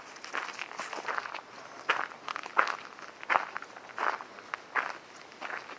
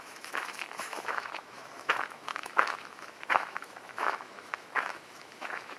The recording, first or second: first